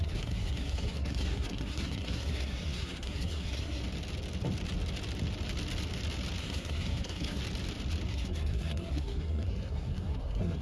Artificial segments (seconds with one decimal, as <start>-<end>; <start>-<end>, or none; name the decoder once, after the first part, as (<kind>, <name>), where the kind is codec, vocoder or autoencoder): 0.0-3.8 (codec, SNAC); 6.4-7.4; 8.1-10.6